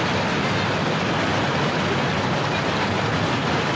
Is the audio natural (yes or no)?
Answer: yes